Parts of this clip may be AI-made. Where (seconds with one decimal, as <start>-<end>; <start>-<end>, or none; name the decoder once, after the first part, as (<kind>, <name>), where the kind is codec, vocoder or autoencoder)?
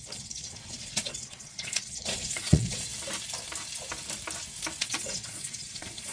0.0-2.9 (vocoder, Vocos); 4.8-6.1